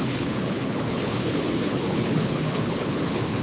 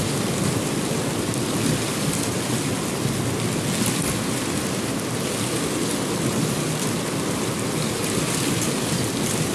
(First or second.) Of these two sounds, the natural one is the second